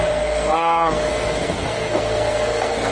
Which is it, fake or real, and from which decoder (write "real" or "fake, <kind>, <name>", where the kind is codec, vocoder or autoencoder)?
fake, codec, SNAC